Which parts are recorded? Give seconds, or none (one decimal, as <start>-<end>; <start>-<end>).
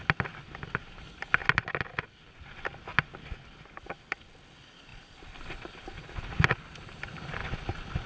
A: 0.0-4.9; 6.1-8.1